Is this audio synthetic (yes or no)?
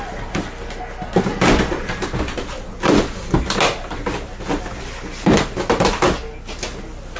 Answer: no